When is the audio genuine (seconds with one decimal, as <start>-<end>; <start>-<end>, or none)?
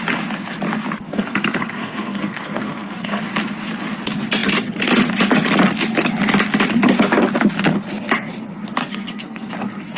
0.0-1.1; 3.2-8.8; 9.5-10.0